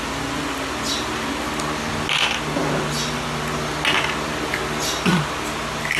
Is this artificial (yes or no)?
no